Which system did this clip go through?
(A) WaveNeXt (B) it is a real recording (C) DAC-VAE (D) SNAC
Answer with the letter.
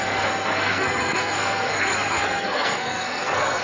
D